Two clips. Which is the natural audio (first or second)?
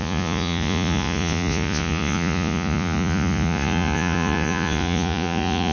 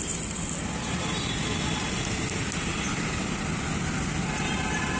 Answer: second